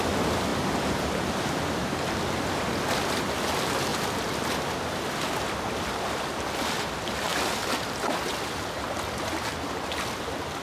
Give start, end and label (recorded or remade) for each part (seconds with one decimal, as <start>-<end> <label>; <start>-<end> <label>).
0.0-0.5 recorded; 0.5-1.4 remade; 1.4-10.6 recorded